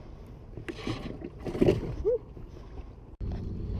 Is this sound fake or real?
real